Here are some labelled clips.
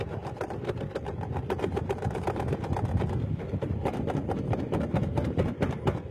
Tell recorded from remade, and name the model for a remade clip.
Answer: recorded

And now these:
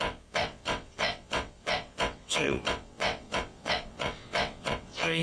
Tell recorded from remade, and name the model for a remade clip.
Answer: remade, vocoder, WaveNeXt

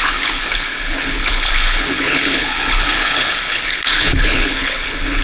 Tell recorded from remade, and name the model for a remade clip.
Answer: remade, codec, HILCodec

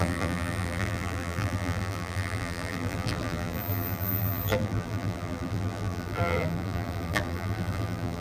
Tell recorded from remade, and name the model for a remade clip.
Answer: remade, vocoder, BigVGAN v2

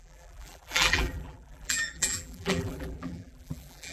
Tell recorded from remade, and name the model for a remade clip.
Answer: remade, vocoder, BigVGAN v2